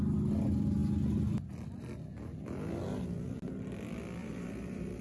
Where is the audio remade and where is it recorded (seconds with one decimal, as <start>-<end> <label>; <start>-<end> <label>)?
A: 0.0-4.2 recorded; 4.2-5.0 remade